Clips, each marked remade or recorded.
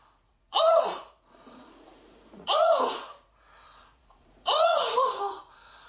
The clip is remade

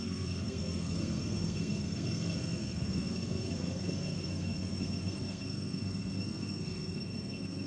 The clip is remade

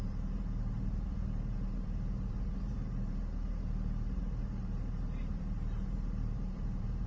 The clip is remade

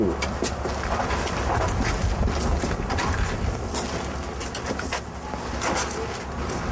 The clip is recorded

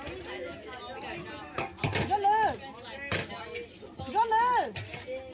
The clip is recorded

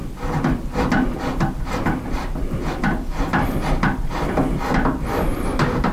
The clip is recorded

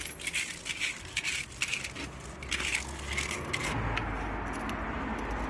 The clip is recorded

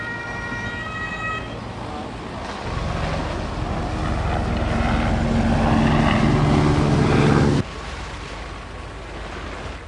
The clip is recorded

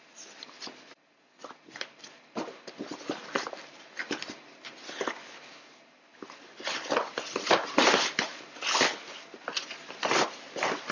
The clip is recorded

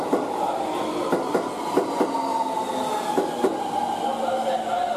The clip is recorded